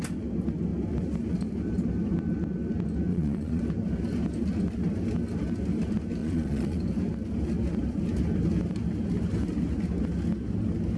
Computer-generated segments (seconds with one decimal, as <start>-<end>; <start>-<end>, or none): 3.1-3.6; 6.2-6.8